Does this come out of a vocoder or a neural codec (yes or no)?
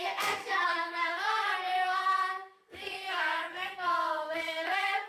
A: yes